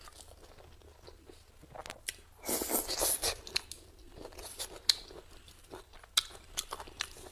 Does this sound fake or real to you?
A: real